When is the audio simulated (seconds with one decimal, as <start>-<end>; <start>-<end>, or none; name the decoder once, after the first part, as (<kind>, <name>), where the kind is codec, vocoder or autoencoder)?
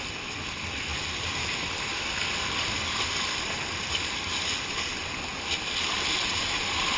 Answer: 0.9-5.1 (vocoder, BigVGAN v2)